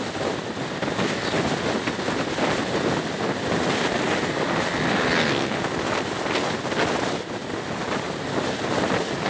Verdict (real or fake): real